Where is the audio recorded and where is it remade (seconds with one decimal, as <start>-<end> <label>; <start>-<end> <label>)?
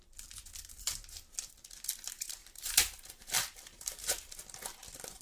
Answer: 0.0-2.4 recorded; 2.4-4.4 remade; 4.4-5.2 recorded